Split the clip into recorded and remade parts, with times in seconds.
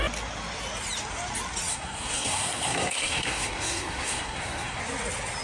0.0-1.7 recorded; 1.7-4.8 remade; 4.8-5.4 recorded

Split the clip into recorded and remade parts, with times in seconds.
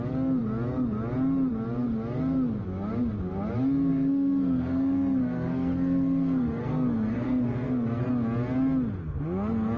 0.0-3.9 recorded; 3.9-8.1 remade; 8.1-9.8 recorded